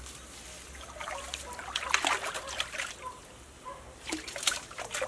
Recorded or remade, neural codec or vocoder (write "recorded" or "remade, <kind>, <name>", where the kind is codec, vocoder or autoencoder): recorded